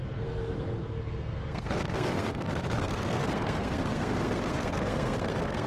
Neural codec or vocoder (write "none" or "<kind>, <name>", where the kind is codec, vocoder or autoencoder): codec, SNAC